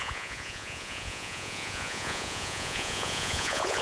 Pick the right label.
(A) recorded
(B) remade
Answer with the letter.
B